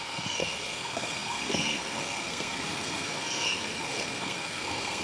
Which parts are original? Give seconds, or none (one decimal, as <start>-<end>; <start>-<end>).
none